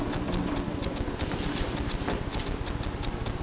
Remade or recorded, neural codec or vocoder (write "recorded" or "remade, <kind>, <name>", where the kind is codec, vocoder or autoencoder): recorded